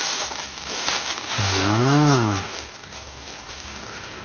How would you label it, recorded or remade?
remade